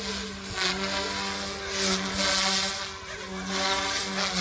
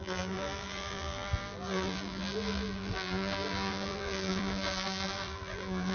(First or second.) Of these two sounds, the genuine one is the first